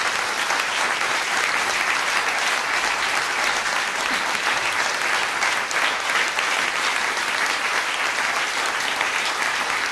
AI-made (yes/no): no